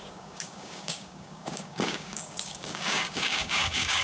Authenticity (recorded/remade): remade